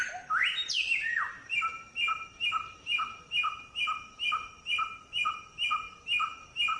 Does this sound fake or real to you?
real